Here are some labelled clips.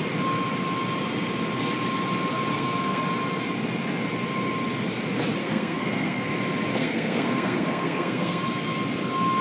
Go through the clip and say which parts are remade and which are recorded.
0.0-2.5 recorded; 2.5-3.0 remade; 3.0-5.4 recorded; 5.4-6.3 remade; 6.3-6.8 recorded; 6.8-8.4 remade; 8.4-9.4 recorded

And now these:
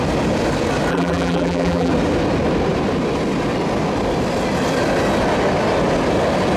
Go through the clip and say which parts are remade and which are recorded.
0.0-0.9 recorded; 0.9-1.9 remade; 1.9-6.6 recorded

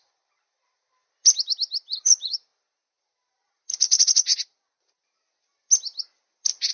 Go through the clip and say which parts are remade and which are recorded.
0.0-1.0 remade; 1.0-1.8 recorded; 1.8-2.5 remade; 2.5-6.7 recorded

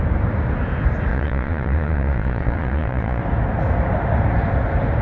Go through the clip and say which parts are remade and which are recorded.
0.0-1.1 recorded; 1.1-3.2 remade; 3.2-5.0 recorded

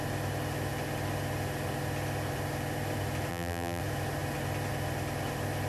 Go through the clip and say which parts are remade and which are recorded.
0.0-3.3 recorded; 3.3-3.8 remade; 3.8-5.7 recorded